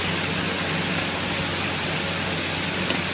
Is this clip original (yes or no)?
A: yes